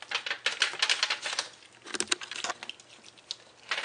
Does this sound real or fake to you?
real